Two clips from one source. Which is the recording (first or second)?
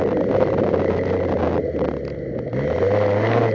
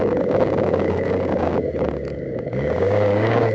first